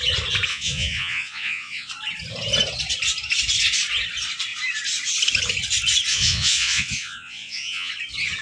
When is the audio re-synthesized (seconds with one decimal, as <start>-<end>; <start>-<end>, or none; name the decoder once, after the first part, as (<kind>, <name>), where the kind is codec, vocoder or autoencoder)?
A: 0.5-1.9 (vocoder, Vocos); 6.1-7.9